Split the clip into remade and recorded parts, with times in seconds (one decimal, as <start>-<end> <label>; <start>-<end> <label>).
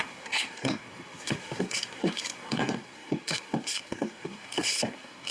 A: 0.0-5.3 remade